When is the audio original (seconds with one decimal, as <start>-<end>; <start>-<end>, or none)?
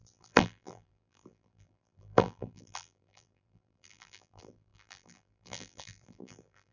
none